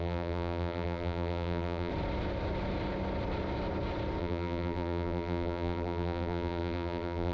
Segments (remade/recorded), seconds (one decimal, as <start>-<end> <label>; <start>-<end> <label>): 0.0-1.9 remade; 1.9-4.2 recorded; 4.2-7.3 remade